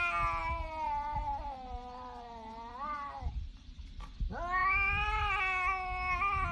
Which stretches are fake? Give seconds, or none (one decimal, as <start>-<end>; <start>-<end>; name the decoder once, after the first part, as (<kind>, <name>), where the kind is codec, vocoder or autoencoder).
0.4-3.8 (vocoder, BigVGAN v2)